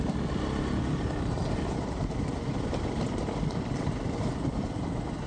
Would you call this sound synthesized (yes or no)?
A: no